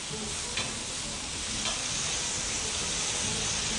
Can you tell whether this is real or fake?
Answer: real